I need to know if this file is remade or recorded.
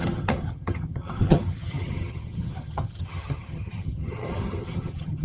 remade